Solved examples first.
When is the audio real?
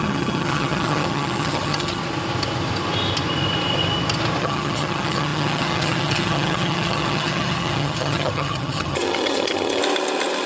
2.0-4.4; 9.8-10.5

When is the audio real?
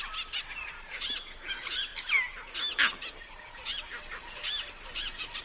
0.0-5.4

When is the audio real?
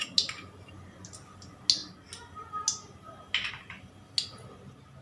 0.0-5.0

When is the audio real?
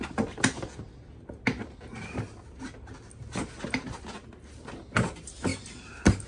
0.0-6.3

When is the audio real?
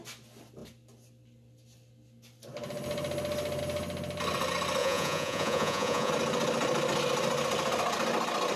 0.0-4.8; 6.1-8.6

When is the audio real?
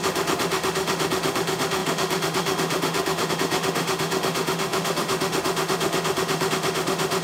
none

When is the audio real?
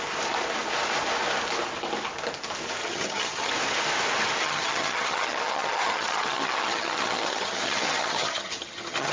0.0-2.8; 3.5-4.4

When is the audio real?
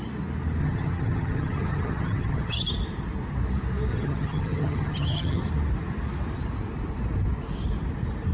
0.0-0.6; 2.6-3.9; 5.5-8.3